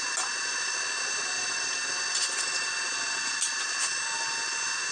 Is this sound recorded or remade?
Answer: recorded